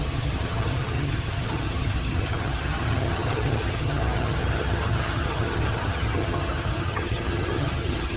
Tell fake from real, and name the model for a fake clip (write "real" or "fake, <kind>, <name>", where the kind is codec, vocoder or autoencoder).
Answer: fake, vocoder, HiFi-GAN